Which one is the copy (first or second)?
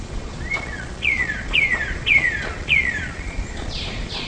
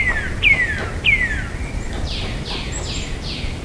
first